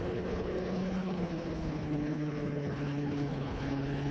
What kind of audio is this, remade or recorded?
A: remade